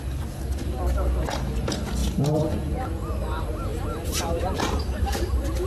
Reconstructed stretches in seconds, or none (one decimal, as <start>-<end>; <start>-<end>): 2.0-2.6; 3.7-4.6